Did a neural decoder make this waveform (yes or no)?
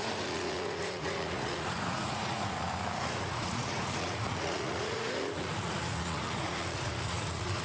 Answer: yes